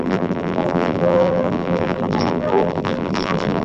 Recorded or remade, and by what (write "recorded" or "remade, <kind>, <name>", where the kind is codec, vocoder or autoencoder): remade, vocoder, BigVGAN v2